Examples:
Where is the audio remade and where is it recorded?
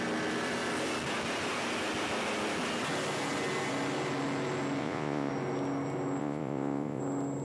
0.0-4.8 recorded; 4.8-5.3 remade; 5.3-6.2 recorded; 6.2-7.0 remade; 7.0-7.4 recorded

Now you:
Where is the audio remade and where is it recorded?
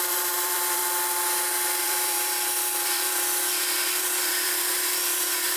0.0-0.8 remade; 0.8-1.8 recorded; 1.8-5.6 remade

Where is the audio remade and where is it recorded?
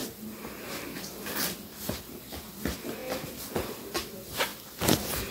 0.0-5.3 recorded